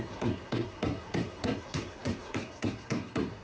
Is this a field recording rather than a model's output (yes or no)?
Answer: no